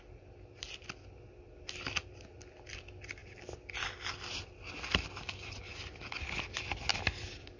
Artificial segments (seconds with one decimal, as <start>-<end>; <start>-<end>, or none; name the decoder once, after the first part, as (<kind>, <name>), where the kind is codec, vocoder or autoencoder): none